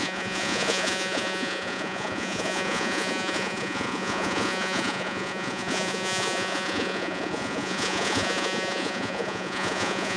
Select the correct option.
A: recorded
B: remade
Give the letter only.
B